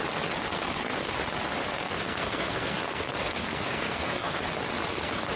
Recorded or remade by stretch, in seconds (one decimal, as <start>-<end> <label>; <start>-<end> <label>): 0.0-0.5 recorded; 0.5-1.1 remade; 1.1-1.7 recorded; 1.7-4.4 remade; 4.4-4.9 recorded; 4.9-5.4 remade